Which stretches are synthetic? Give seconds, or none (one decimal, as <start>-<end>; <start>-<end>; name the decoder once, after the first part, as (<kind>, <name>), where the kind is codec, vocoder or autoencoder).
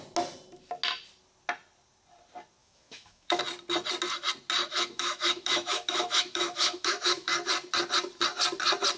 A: 2.6-3.4 (autoencoder, DAC-VAE); 4.7-7.3